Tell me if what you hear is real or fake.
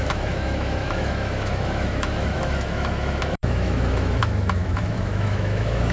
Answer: fake